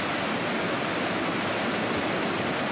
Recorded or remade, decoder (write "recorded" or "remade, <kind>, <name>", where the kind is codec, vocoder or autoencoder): recorded